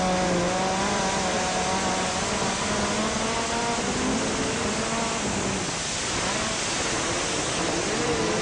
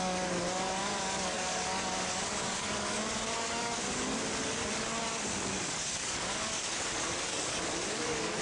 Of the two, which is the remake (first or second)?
second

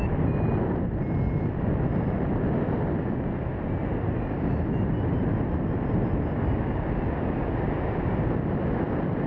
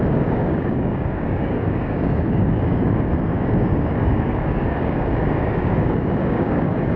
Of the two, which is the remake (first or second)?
second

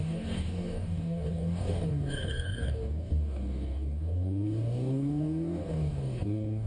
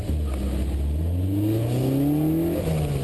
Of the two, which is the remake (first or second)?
first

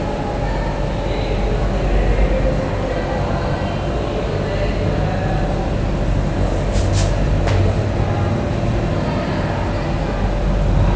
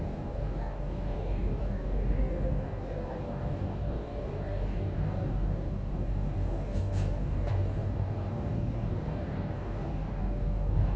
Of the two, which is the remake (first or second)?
second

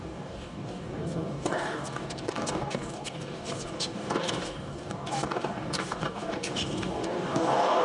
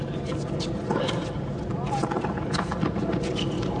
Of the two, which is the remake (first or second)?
first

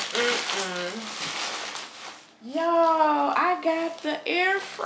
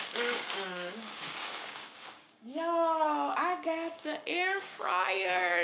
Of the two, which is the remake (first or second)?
second